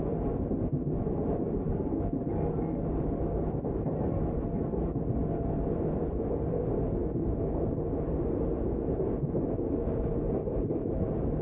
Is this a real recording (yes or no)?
yes